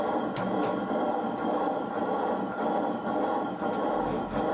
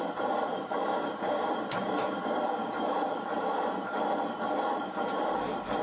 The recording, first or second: first